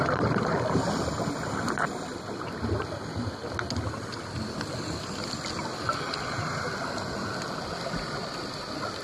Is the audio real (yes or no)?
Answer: yes